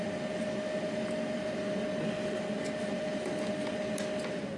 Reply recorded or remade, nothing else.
recorded